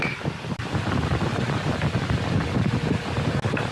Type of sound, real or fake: real